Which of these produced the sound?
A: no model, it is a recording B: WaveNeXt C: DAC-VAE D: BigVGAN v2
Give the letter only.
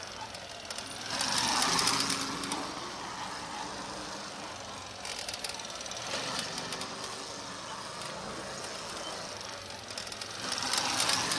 A